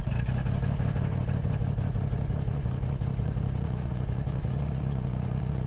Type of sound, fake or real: fake